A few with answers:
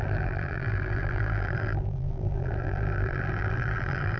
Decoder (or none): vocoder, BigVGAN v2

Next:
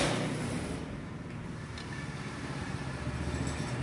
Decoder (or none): vocoder, BigVGAN v2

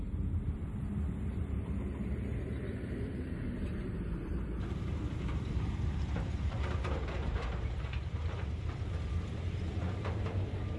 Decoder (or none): vocoder, BigVGAN v2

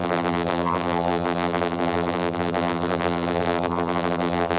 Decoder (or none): vocoder, BigVGAN v2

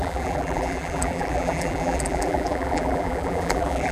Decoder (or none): vocoder, BigVGAN v2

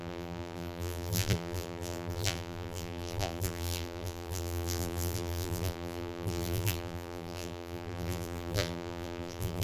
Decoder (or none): vocoder, BigVGAN v2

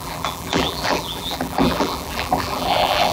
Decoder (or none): vocoder, BigVGAN v2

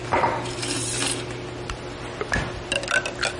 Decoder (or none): none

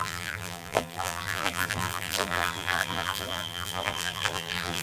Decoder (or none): vocoder, BigVGAN v2